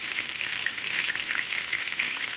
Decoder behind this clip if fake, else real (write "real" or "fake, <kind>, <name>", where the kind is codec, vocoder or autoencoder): fake, autoencoder, DAC-VAE